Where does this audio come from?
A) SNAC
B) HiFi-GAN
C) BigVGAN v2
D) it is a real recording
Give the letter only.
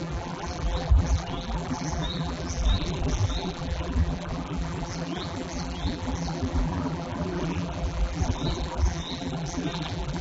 C